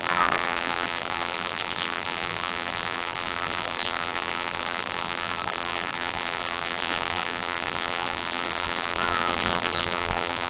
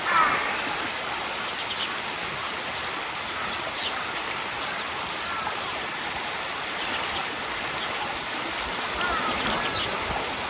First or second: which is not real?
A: first